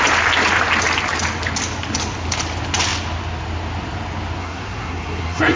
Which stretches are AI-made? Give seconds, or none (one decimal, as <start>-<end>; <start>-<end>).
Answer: 4.4-5.6